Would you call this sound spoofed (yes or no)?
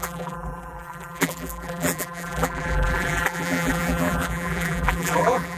yes